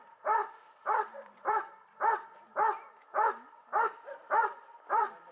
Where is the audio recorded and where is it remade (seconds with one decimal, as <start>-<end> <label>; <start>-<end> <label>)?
0.0-0.4 recorded; 0.4-1.7 remade; 1.7-4.4 recorded; 4.4-5.3 remade